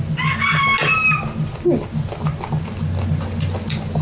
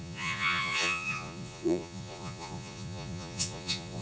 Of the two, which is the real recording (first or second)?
first